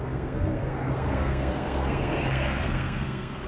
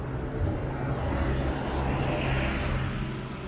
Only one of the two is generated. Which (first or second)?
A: first